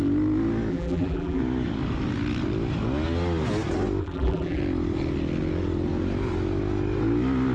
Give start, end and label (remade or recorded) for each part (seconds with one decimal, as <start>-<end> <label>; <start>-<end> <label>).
0.0-0.7 recorded; 0.7-1.4 remade; 1.4-4.0 recorded; 4.0-4.6 remade; 4.6-7.5 recorded